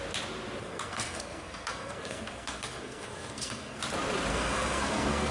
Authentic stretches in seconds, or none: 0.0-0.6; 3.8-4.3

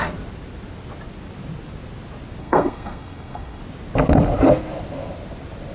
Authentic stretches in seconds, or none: 0.0-2.4; 3.6-5.7